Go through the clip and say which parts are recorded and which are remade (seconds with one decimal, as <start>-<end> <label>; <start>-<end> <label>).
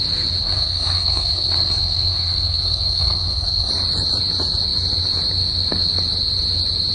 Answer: 0.0-0.4 recorded; 0.4-3.7 remade; 3.7-6.9 recorded